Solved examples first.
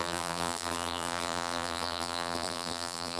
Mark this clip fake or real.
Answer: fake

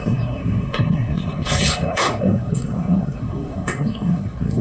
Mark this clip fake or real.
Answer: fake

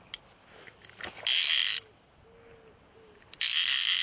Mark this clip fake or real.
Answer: real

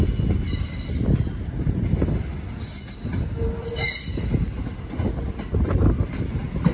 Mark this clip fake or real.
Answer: real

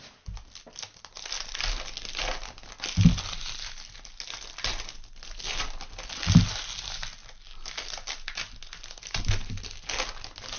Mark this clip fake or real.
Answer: real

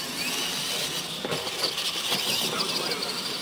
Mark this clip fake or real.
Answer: real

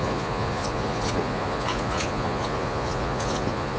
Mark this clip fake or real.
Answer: fake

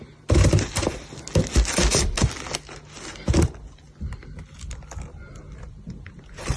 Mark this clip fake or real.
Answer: real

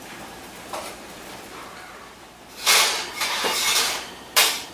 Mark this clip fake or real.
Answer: fake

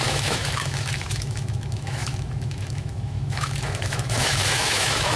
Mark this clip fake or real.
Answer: fake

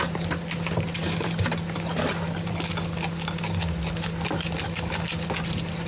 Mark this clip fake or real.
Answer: real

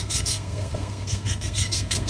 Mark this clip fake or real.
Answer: fake